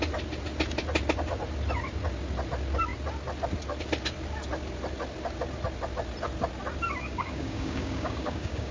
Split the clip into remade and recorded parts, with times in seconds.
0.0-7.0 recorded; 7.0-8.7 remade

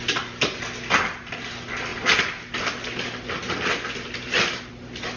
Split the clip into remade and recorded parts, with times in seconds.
0.0-5.2 recorded

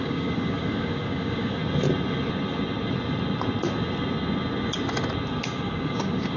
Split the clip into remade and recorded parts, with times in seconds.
0.0-1.6 remade; 1.6-5.4 recorded; 5.4-6.4 remade

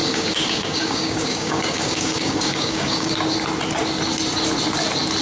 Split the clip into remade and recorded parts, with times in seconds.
0.0-3.1 remade; 3.1-5.2 recorded

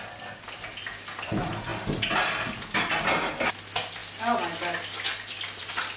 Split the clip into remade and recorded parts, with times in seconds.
0.0-6.0 recorded

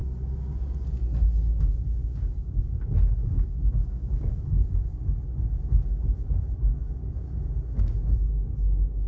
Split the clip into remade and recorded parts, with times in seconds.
0.0-2.0 recorded; 2.0-2.6 remade; 2.6-3.2 recorded; 3.2-4.4 remade; 4.4-9.1 recorded